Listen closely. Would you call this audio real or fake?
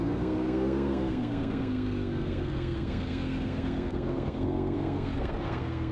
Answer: fake